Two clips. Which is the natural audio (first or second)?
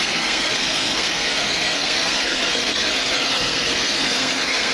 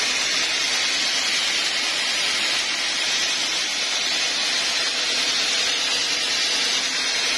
second